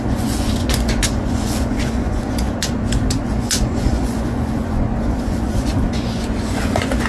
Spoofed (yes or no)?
yes